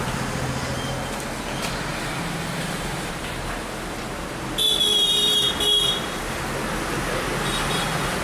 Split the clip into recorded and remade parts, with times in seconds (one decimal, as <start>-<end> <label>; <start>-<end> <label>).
0.0-1.9 recorded; 1.9-3.4 remade; 3.4-4.9 recorded; 4.9-5.5 remade; 5.5-8.2 recorded